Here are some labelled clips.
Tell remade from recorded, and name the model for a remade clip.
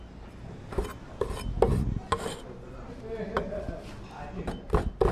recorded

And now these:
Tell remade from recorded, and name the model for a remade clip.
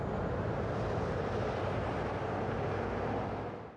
recorded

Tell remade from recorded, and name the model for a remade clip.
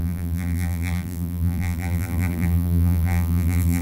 remade, vocoder, BigVGAN v2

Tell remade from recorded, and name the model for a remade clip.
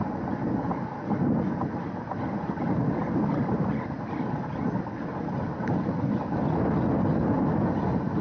recorded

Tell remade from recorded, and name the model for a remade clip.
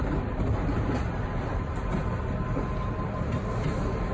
recorded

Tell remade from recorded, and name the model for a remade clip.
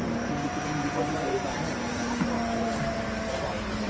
remade, vocoder, BigVGAN v2